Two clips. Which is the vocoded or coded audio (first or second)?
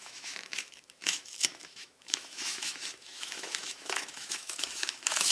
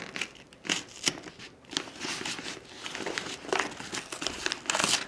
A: first